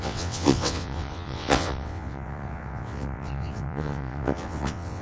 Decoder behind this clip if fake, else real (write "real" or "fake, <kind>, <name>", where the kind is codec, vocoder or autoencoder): fake, vocoder, WaveNeXt